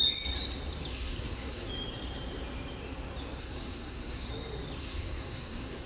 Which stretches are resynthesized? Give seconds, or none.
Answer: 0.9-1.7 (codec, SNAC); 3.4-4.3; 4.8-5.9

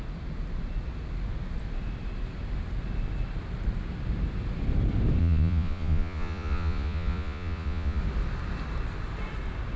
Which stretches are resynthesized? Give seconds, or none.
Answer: 5.2-8.0 (vocoder, Vocos)